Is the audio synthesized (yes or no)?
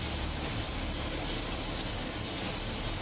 no